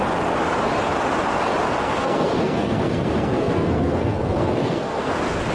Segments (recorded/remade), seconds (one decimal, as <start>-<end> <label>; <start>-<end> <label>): 0.0-1.8 recorded; 1.8-5.1 remade; 5.1-5.5 recorded